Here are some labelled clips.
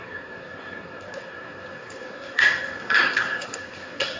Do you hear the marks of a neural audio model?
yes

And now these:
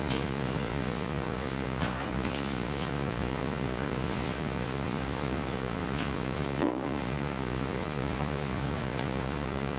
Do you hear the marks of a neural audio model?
yes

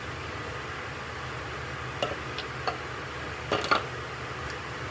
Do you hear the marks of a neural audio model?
no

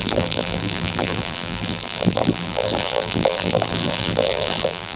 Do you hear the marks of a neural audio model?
yes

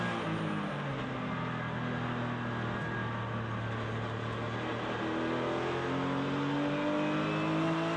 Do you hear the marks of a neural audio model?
no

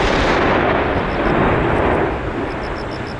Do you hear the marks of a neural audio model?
no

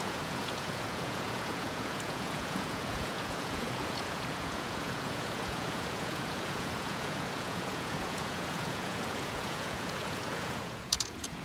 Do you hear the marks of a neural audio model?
yes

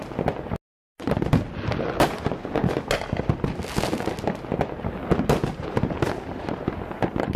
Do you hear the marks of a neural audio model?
no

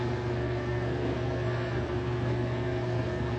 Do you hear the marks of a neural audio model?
yes